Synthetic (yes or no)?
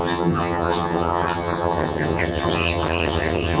yes